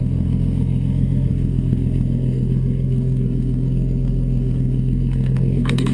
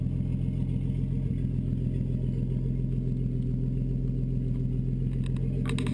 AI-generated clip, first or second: first